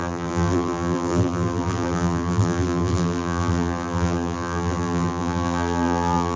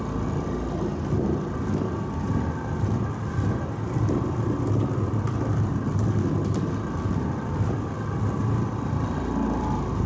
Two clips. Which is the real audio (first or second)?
second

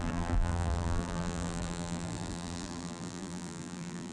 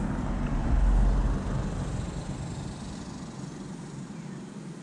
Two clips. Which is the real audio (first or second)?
second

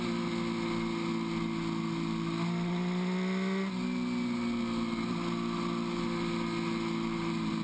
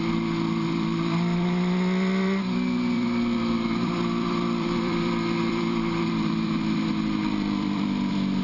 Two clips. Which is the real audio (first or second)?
first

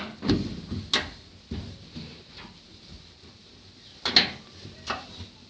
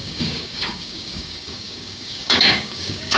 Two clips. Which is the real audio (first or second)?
first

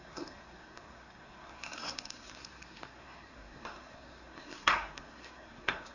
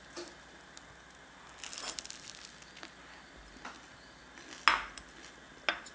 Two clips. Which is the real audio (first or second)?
second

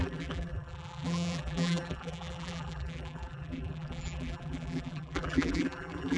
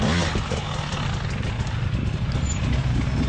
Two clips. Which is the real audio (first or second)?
second